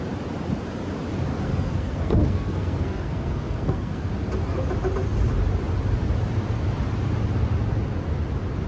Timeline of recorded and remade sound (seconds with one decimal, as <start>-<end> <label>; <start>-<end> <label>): 0.0-1.3 recorded; 1.3-4.1 remade; 4.1-8.7 recorded